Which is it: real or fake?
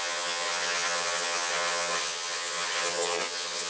fake